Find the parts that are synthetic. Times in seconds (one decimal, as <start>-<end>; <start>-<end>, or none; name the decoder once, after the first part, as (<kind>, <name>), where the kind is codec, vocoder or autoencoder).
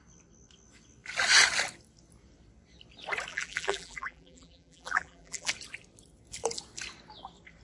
3.3-5.5 (vocoder, BigVGAN v2)